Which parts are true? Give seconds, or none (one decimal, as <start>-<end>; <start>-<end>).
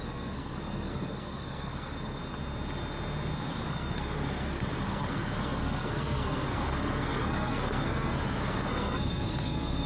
2.2-3.7